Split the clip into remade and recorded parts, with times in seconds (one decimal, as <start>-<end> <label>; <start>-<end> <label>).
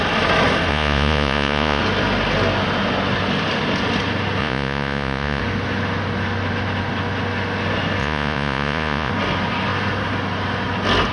0.0-0.7 recorded; 0.7-1.8 remade; 1.8-4.4 recorded; 4.4-5.4 remade; 5.4-8.0 recorded; 8.0-9.1 remade; 9.1-11.1 recorded